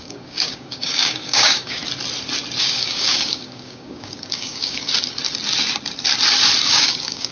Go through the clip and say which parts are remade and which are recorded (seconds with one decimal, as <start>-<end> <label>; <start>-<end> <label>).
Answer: 0.0-1.8 remade; 1.8-2.6 recorded; 2.6-4.9 remade; 4.9-6.7 recorded; 6.7-7.3 remade